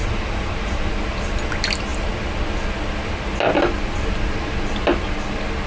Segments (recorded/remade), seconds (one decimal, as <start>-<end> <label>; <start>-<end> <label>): 0.0-0.9 remade; 0.9-5.7 recorded